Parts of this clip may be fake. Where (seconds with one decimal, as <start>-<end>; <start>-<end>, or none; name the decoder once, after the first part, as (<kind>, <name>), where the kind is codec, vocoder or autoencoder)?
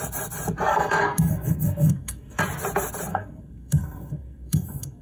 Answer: 0.7-2.4 (codec, SNAC); 3.1-5.0